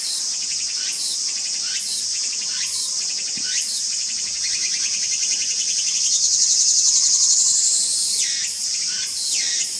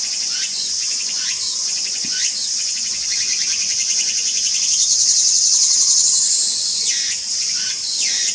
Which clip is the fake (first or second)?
second